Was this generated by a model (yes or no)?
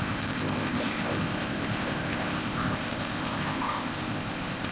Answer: yes